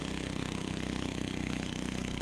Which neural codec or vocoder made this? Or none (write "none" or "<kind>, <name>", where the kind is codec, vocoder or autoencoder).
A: codec, SNAC